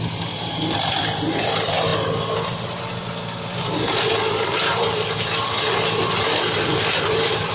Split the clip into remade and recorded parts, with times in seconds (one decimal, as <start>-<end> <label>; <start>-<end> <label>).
0.0-7.5 remade